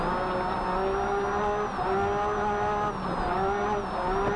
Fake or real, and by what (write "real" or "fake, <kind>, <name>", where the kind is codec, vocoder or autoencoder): real